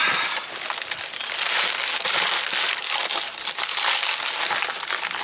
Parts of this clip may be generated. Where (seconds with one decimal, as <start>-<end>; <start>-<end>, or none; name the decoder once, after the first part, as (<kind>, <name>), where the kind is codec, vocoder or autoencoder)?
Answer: none

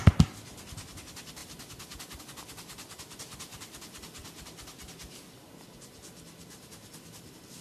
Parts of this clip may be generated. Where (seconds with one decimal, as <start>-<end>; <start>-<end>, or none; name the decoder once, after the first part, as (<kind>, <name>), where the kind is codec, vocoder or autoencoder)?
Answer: none

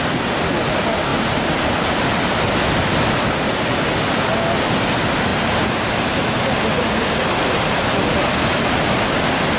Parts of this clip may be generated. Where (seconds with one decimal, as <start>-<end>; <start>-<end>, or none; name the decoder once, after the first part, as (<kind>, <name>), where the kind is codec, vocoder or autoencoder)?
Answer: none

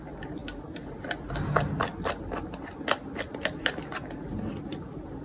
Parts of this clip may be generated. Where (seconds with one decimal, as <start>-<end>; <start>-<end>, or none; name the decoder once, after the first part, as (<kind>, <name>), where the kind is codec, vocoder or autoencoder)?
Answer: none

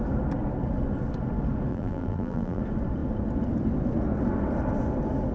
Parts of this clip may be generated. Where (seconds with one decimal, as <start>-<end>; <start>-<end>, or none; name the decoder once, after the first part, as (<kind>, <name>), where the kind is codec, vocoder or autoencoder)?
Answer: 1.7-2.6 (vocoder, BigVGAN v2)

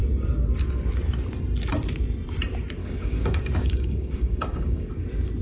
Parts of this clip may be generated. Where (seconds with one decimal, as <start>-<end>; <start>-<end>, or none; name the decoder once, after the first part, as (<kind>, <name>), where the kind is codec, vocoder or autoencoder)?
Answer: 2.8-4.9 (codec, DAC)

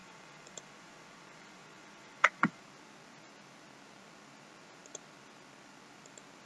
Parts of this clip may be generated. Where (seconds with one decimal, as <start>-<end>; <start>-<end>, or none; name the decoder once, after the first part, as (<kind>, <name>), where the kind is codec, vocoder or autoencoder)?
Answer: 0.0-2.6 (vocoder, Vocos)

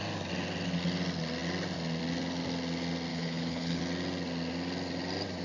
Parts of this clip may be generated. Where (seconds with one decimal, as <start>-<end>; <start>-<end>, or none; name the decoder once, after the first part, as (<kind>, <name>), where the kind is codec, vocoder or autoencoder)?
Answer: 3.1-3.8 (codec, HILCodec)